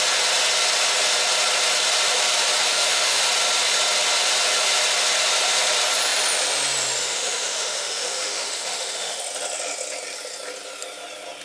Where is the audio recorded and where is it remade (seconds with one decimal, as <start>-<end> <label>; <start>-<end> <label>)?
0.0-2.7 recorded; 2.7-3.2 remade; 3.2-7.0 recorded; 7.0-9.2 remade; 9.2-11.4 recorded